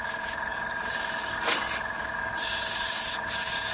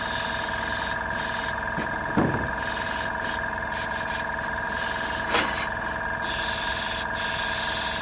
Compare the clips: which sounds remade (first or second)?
first